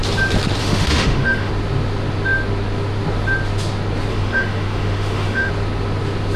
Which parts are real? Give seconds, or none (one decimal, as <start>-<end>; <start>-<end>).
0.0-0.6; 1.5-4.1; 5.5-6.4